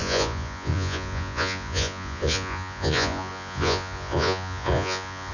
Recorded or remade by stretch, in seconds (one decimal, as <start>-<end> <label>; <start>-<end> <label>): 0.0-5.3 remade

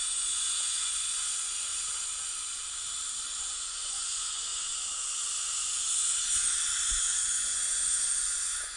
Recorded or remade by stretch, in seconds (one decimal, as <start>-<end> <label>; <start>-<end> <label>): 0.0-1.7 remade; 1.7-3.4 recorded; 3.4-4.5 remade; 4.5-6.9 recorded; 6.9-8.8 remade

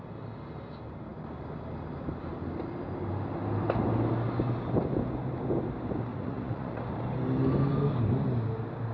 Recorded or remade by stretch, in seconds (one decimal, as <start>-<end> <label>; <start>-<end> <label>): 0.0-6.1 recorded; 6.1-6.8 remade; 6.8-8.9 recorded

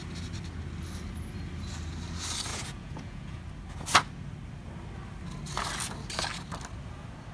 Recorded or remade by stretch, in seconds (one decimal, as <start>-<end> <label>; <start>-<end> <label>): 0.0-2.5 recorded; 2.5-3.4 remade; 3.4-7.3 recorded

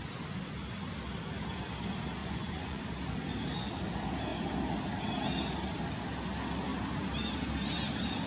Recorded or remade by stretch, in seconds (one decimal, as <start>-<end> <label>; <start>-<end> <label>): 0.0-2.2 recorded; 2.2-2.8 remade; 2.8-8.3 recorded

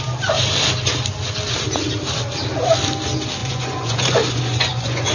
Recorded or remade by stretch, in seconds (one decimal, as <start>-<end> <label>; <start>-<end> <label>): 0.0-3.4 recorded; 3.4-5.1 remade

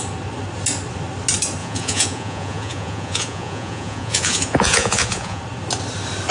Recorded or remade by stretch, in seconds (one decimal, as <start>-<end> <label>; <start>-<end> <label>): 0.0-1.6 recorded; 1.6-5.4 remade; 5.4-6.3 recorded

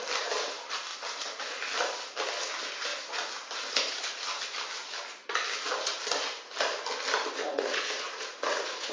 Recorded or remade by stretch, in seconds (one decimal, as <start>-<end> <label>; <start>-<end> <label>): 0.0-7.4 recorded; 7.4-8.9 remade